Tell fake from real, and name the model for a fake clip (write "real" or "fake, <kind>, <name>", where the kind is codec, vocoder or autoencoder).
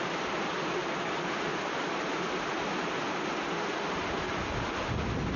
real